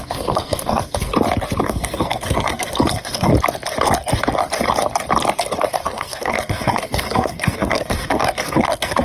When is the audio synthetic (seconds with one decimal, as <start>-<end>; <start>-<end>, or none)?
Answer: 0.0-1.1; 1.6-3.3; 5.7-9.0